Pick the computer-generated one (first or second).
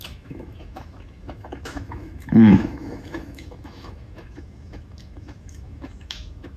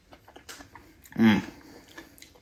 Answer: first